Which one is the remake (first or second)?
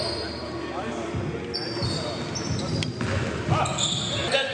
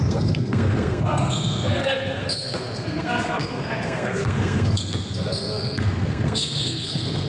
second